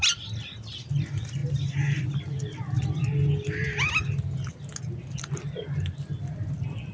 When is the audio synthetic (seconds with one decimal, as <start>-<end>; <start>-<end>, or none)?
none